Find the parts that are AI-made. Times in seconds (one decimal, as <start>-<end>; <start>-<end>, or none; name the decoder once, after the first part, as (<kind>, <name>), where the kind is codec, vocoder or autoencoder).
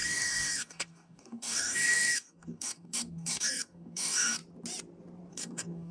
0.0-4.4 (codec, DAC); 5.3-5.9